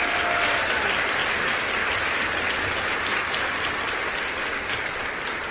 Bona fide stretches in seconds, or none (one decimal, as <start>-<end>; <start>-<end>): 0.0-5.5